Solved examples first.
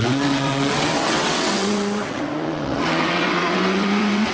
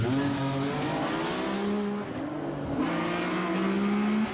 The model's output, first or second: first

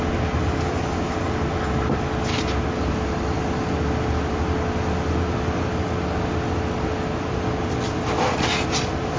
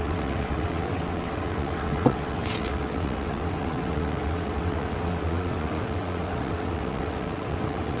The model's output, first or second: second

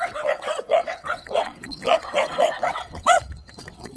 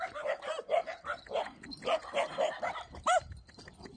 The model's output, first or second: first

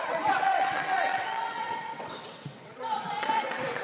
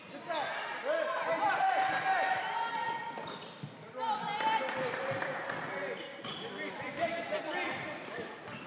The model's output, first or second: first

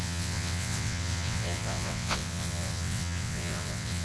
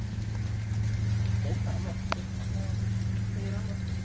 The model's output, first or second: first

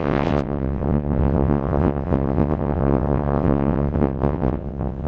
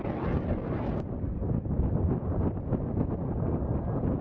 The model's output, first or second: first